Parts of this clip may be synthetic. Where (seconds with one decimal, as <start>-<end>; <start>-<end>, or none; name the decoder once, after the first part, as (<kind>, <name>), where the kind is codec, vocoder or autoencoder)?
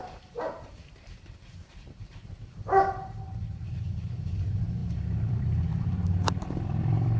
0.0-7.2 (vocoder, BigVGAN v2)